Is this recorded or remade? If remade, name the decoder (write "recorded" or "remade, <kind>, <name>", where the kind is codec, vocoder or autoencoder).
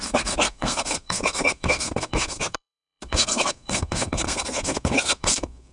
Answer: remade, codec, SNAC